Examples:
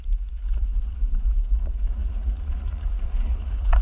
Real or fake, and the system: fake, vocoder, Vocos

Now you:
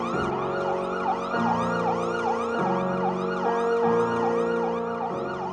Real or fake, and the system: real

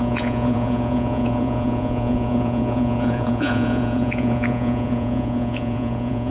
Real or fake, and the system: fake, vocoder, Vocos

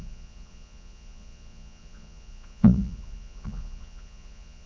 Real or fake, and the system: fake, vocoder, Vocos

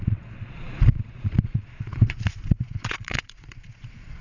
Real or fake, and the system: fake, vocoder, Vocos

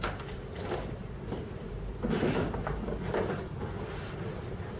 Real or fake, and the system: real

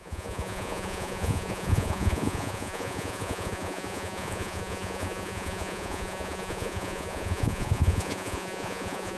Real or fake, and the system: fake, vocoder, Vocos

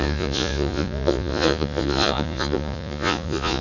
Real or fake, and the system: fake, vocoder, Vocos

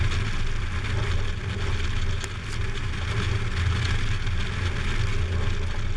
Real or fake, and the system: real